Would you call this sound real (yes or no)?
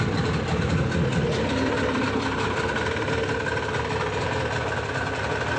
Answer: yes